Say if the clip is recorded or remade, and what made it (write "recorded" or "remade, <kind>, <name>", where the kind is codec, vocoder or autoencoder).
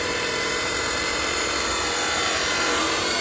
remade, vocoder, BigVGAN v2